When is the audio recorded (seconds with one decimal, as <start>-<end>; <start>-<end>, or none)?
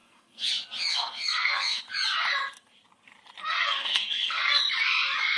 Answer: 0.5-0.9; 1.8-3.4; 4.6-5.4